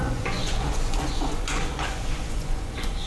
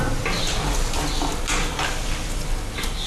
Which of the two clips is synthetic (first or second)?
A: first